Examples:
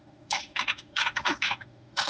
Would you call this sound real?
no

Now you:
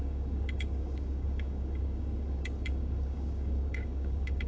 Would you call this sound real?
no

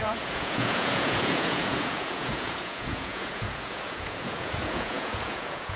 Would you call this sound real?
no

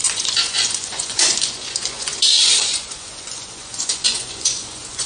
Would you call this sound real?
no